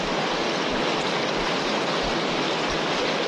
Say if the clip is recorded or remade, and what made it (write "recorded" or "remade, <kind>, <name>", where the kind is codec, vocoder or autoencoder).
recorded